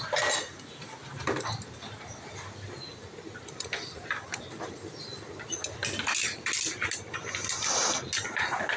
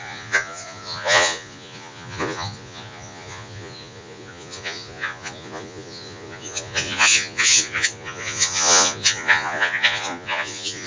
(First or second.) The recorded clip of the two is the first